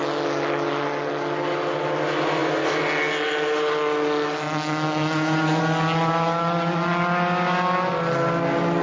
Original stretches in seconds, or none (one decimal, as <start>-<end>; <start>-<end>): 0.0-8.8